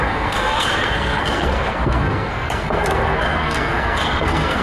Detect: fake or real fake